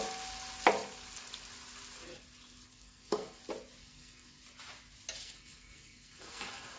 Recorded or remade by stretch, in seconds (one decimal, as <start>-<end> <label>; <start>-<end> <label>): 0.0-2.7 recorded; 2.7-3.4 remade; 3.4-3.8 recorded; 3.8-4.4 remade; 4.4-5.2 recorded; 5.2-6.8 remade